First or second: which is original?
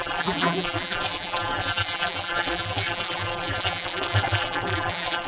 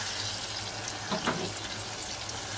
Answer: second